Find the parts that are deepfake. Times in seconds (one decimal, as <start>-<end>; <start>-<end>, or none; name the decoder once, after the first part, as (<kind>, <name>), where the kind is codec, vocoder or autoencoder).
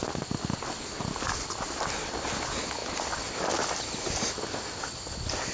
none